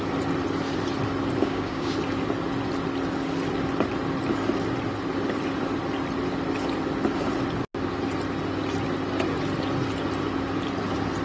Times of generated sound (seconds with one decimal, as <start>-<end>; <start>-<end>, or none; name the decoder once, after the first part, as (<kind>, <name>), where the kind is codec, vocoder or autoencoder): 1.4-1.9 (codec, DAC)